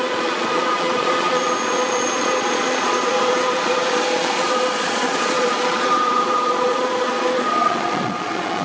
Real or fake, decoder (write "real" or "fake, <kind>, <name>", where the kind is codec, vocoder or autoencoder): fake, vocoder, Vocos